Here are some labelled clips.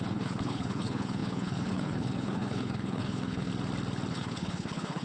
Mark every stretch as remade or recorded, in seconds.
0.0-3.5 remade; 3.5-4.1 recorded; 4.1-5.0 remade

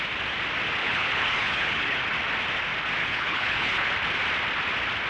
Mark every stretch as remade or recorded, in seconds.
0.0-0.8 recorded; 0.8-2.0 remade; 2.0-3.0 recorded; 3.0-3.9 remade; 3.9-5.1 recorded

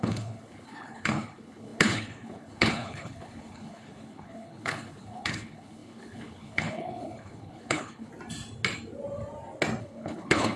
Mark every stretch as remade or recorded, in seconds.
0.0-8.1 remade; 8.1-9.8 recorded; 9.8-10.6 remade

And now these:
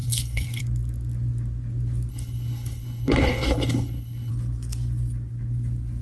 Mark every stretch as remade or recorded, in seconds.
0.0-0.6 remade; 0.6-2.1 recorded; 2.1-4.3 remade; 4.3-6.0 recorded

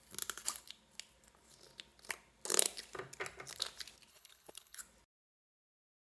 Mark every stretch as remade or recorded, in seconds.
0.0-4.1 recorded; 4.1-4.8 remade; 4.8-6.0 recorded

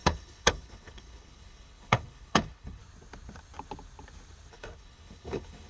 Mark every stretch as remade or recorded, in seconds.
0.0-2.8 remade; 2.8-4.5 recorded; 4.5-5.7 remade

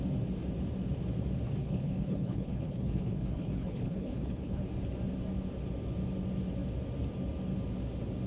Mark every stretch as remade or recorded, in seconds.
0.0-1.6 recorded; 1.6-4.6 remade; 4.6-8.3 recorded

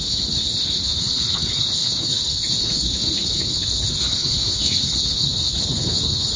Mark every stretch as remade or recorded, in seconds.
0.0-6.4 remade